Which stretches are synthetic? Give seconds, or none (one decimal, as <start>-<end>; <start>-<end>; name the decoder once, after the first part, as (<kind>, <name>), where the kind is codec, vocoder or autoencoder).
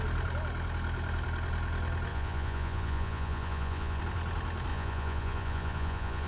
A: 2.1-4.0 (vocoder, Vocos); 4.7-6.3